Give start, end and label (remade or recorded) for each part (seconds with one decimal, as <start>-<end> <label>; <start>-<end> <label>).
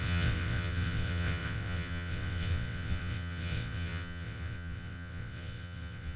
0.0-6.2 remade